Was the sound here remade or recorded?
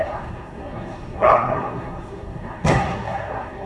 remade